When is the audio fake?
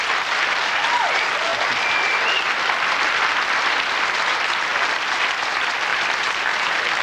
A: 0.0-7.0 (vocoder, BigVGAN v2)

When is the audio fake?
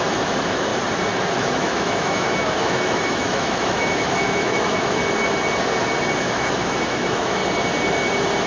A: 0.0-0.7 (autoencoder, DAC-VAE); 1.4-5.0; 6.2-7.4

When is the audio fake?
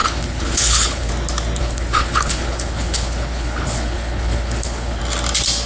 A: 0.0-1.1 (codec, HILCodec); 1.6-5.0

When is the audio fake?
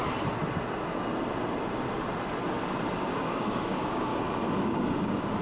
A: 3.2-4.1 (codec, DAC); 4.6-5.4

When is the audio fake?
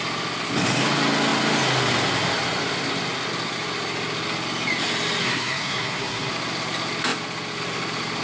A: 5.2-6.3 (codec, SNAC)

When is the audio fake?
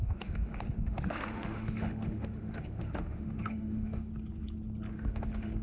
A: 0.0-4.1 (autoencoder, DAC-VAE); 4.9-5.6